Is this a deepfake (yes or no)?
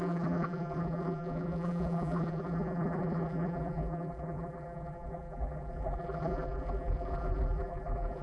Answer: yes